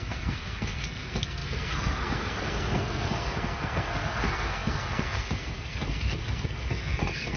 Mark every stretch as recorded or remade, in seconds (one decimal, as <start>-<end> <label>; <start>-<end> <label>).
0.0-7.4 remade